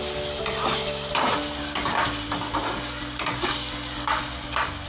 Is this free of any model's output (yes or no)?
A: yes